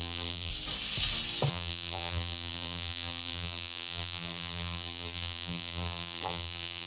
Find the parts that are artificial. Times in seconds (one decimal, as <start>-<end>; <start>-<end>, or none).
0.0-0.5; 1.5-6.9